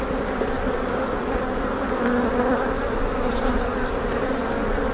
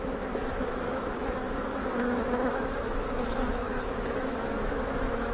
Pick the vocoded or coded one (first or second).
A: second